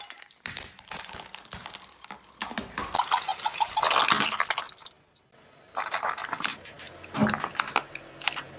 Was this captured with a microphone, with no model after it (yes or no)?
yes